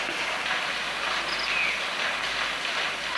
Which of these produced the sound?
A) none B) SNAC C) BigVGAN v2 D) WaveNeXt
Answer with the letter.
A